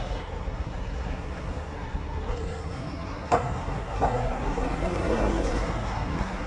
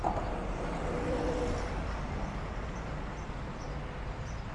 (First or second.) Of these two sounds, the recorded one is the second